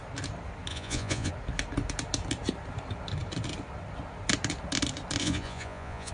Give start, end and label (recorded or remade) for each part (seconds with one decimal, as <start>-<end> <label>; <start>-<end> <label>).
0.0-0.7 recorded; 0.7-1.3 remade; 1.3-5.2 recorded; 5.2-6.1 remade

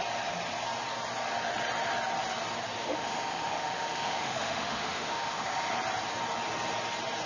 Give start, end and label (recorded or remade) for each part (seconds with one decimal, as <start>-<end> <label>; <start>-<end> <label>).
0.0-2.8 recorded; 2.8-5.7 remade; 5.7-7.3 recorded

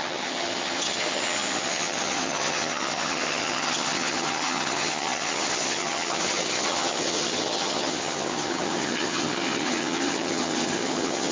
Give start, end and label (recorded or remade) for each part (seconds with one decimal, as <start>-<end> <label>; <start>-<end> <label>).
0.0-11.3 remade

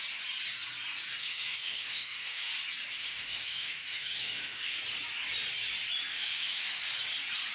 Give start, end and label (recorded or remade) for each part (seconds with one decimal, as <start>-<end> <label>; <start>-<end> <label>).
0.0-1.2 recorded; 1.2-2.5 remade; 2.5-3.0 recorded; 3.0-4.8 remade; 4.8-6.1 recorded; 6.1-6.8 remade; 6.8-7.5 recorded

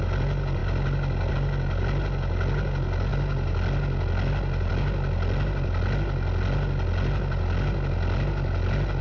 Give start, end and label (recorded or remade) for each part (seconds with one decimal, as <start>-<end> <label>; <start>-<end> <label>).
0.0-9.0 recorded

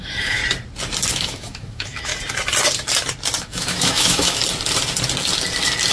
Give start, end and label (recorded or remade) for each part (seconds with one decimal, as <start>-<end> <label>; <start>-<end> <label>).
0.0-0.4 remade; 0.4-1.1 recorded; 1.1-2.1 remade; 2.1-3.4 recorded; 3.4-4.4 remade; 4.4-5.9 recorded